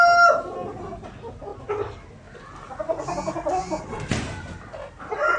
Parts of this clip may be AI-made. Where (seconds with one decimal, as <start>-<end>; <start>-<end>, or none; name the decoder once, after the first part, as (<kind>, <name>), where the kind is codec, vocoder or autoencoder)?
none